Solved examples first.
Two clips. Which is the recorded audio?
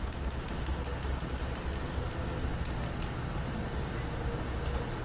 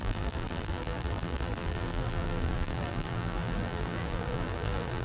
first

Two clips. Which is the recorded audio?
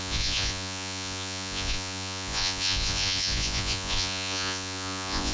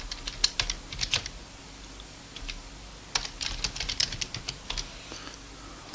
second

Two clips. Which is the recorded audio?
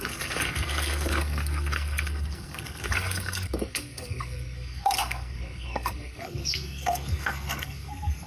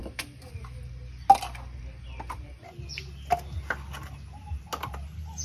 second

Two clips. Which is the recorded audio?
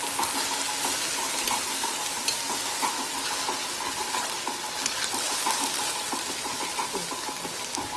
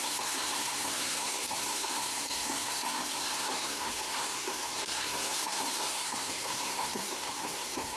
first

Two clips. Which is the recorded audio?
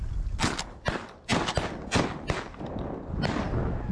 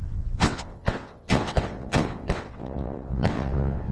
first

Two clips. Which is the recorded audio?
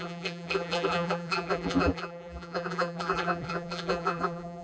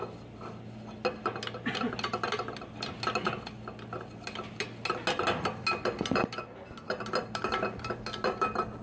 second